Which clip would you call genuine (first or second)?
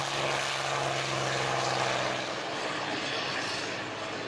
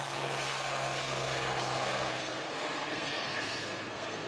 first